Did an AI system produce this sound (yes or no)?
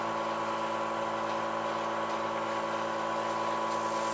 no